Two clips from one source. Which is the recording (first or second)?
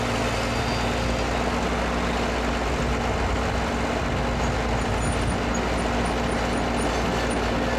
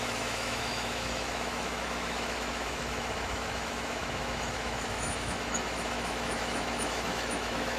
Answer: first